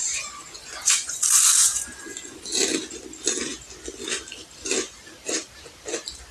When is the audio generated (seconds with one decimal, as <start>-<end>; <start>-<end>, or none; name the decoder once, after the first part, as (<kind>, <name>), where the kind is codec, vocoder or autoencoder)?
0.0-2.5 (vocoder, Vocos)

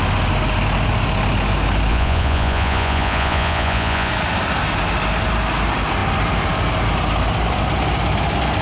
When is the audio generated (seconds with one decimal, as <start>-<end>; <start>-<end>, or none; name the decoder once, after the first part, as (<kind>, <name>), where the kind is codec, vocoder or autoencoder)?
1.9-4.1 (vocoder, Vocos)

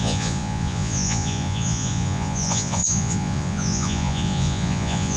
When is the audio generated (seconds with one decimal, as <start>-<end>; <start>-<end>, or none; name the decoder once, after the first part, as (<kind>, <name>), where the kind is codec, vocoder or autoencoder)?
0.0-5.2 (vocoder, Vocos)

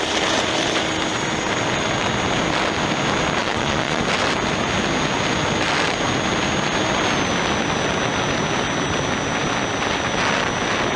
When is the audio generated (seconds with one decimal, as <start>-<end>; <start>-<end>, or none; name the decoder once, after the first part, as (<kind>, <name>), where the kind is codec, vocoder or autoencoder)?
3.4-4.0 (vocoder, Vocos)

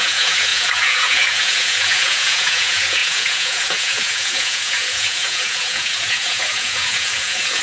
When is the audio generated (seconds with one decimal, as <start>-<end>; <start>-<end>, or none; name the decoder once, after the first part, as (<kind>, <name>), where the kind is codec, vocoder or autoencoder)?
0.0-7.6 (vocoder, Vocos)

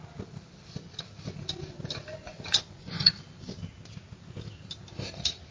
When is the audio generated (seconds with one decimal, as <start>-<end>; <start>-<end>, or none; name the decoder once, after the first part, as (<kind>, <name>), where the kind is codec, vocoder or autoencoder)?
2.1-3.1 (vocoder, Vocos)

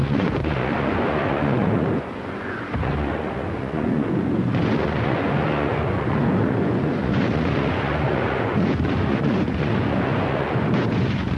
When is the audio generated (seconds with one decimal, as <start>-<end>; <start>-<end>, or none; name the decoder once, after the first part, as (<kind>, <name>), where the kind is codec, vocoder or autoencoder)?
0.0-11.4 (vocoder, Vocos)

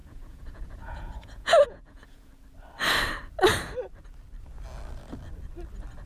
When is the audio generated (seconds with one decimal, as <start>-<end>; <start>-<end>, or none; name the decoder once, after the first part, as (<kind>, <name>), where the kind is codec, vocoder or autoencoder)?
0.0-2.3 (vocoder, Vocos)